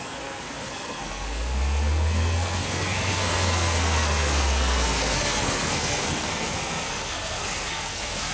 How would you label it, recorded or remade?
remade